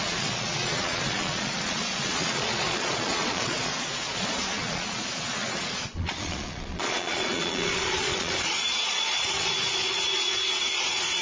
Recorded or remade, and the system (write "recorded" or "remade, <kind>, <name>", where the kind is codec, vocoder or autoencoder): remade, vocoder, Vocos